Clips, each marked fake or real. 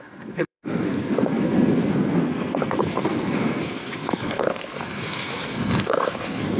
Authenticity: fake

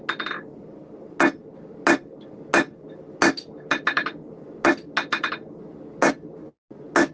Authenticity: real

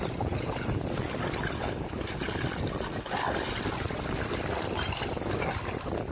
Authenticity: real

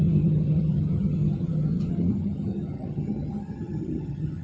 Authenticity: fake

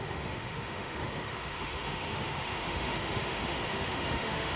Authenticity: fake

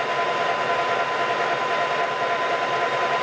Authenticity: real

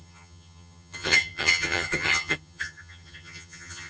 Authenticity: fake